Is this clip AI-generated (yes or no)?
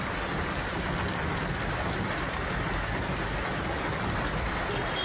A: no